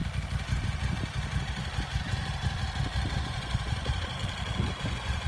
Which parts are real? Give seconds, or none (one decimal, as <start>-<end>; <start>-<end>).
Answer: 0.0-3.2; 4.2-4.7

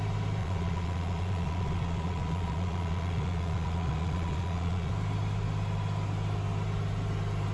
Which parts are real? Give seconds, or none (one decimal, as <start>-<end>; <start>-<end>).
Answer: 0.0-0.4; 4.9-7.5

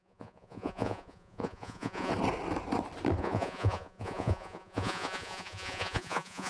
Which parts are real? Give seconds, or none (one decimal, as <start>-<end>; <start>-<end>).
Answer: 2.1-3.2